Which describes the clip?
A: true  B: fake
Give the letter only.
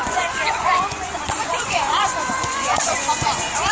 B